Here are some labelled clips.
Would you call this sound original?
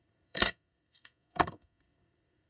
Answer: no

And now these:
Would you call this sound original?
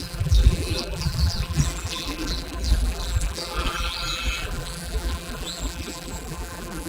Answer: no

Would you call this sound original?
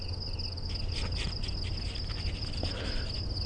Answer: yes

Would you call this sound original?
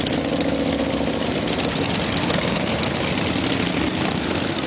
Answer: yes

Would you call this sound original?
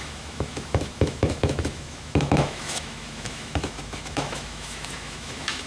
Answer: no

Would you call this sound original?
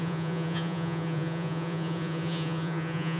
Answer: no